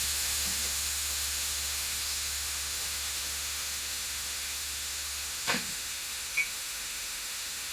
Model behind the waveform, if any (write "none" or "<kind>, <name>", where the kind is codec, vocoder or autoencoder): autoencoder, DAC-VAE